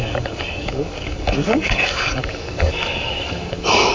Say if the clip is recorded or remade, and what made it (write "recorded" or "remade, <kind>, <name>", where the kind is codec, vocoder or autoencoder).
remade, codec, DAC